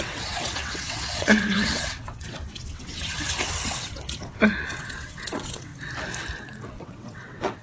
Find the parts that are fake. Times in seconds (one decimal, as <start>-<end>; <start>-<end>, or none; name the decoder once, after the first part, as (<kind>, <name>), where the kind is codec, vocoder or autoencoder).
0.0-5.7 (vocoder, WaveNeXt); 6.5-7.6